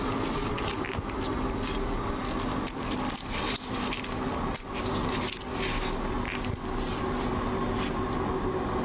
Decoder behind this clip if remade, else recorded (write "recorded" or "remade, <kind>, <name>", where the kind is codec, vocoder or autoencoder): recorded